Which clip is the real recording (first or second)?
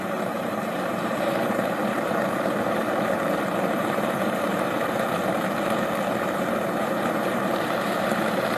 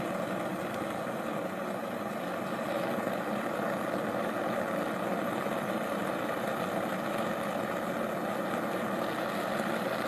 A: second